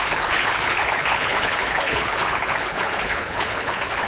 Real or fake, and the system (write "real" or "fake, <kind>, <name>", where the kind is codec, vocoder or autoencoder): fake, codec, HILCodec